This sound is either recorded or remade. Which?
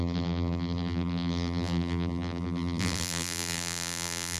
remade